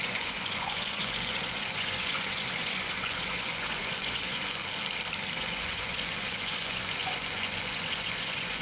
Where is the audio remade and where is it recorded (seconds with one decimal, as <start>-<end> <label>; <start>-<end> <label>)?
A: 0.0-4.6 remade; 4.6-5.4 recorded; 5.4-8.6 remade